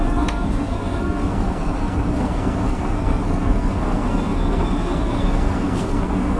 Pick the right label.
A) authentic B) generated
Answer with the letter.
B